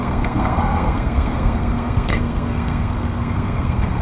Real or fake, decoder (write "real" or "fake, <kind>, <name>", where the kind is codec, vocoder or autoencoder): fake, codec, SNAC